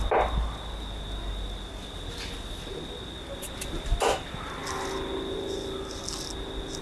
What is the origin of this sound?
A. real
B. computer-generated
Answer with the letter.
A